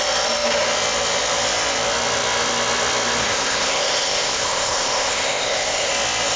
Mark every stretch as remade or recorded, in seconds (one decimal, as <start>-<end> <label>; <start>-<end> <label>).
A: 0.0-3.2 recorded; 3.2-5.9 remade; 5.9-6.4 recorded